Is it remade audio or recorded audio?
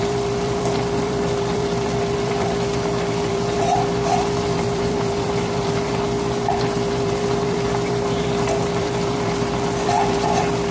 remade